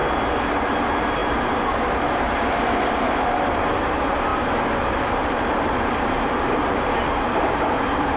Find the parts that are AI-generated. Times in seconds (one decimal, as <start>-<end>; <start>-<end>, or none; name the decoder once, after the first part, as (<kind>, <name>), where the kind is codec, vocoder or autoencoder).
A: 0.7-8.2 (vocoder, BigVGAN v2)